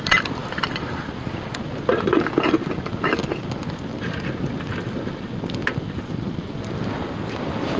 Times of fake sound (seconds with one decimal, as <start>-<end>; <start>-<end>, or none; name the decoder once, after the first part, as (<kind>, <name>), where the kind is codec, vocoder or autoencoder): none